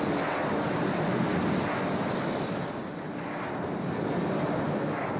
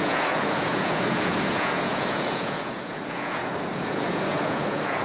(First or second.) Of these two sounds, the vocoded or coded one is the second